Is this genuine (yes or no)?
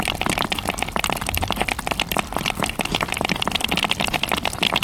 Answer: yes